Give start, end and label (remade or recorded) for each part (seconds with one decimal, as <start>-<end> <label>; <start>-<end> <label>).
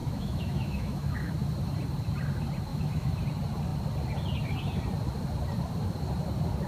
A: 0.0-1.3 remade; 1.3-2.7 recorded; 2.7-3.2 remade; 3.2-6.7 recorded